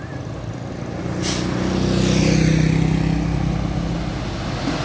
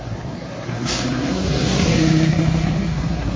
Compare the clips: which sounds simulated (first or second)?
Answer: second